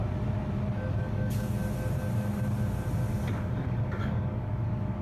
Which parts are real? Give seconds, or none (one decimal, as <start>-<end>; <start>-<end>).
0.0-0.9; 1.6-3.3